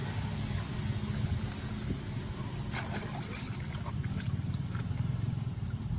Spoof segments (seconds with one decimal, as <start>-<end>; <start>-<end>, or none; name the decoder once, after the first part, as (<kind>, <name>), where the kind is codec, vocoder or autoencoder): none